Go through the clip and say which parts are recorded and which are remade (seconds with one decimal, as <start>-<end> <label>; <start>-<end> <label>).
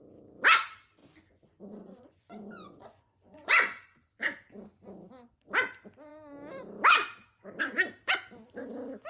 0.0-1.0 recorded; 1.0-5.5 remade; 5.5-9.1 recorded